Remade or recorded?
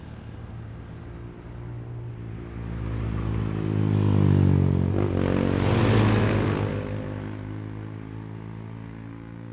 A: recorded